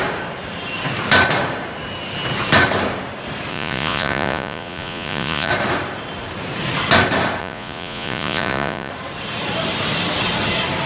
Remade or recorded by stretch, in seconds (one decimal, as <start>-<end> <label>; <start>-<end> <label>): 0.0-3.5 recorded; 3.5-5.5 remade; 5.5-7.4 recorded; 7.4-8.9 remade; 8.9-10.9 recorded